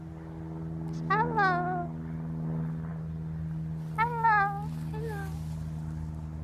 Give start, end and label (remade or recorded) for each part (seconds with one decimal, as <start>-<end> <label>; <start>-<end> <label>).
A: 0.0-6.4 recorded